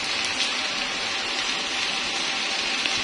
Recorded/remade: recorded